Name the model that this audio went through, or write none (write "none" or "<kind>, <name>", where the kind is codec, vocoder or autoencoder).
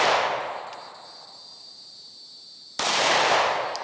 none